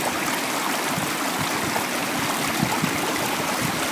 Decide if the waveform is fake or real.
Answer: real